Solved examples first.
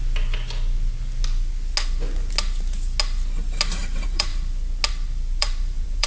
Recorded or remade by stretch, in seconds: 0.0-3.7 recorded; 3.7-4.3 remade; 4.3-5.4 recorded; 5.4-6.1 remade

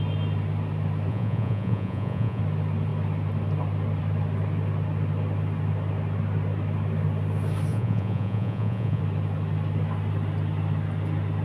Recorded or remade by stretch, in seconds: 0.0-1.1 recorded; 1.1-2.4 remade; 2.4-7.7 recorded; 7.7-9.0 remade; 9.0-11.4 recorded

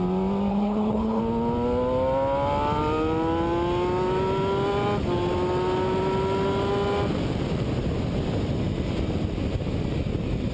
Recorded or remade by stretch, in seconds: 0.0-0.5 recorded; 0.5-1.2 remade; 1.2-10.5 recorded

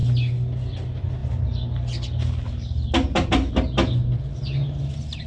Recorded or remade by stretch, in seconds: 0.0-5.3 recorded

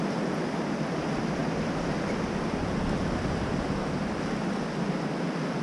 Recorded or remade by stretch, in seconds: 0.0-5.6 recorded

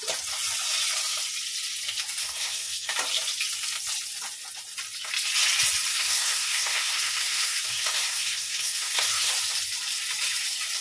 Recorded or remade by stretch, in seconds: 0.0-2.2 recorded; 2.2-2.9 remade; 2.9-5.9 recorded; 5.9-9.3 remade; 9.3-10.8 recorded

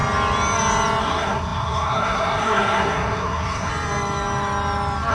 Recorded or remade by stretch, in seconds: 0.0-1.0 recorded; 1.0-3.7 remade; 3.7-5.1 recorded

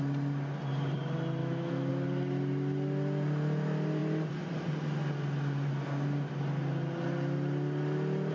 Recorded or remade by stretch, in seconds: 0.0-1.4 recorded; 1.4-1.9 remade; 1.9-8.3 recorded